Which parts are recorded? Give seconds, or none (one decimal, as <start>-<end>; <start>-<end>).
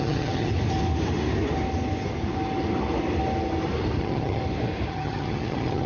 0.5-4.0; 4.4-4.9